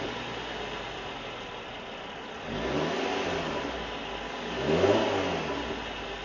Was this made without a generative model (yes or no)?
yes